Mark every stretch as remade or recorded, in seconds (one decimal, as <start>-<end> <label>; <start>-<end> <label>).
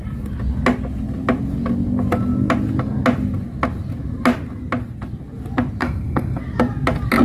0.0-5.8 recorded; 5.8-6.4 remade; 6.4-7.2 recorded